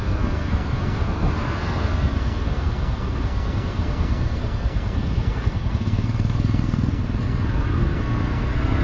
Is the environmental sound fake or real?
fake